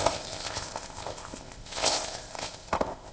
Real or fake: fake